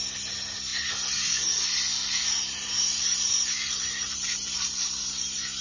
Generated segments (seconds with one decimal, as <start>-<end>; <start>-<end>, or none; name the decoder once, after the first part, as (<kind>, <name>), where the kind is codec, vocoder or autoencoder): 1.9-5.6 (vocoder, BigVGAN v2)